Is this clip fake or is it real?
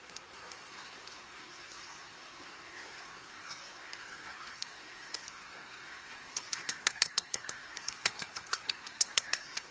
fake